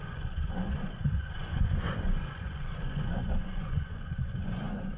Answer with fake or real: fake